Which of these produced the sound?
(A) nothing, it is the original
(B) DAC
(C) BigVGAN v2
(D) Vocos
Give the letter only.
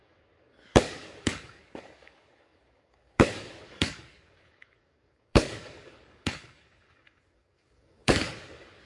B